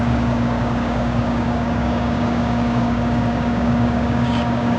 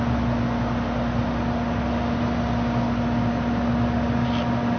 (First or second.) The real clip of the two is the second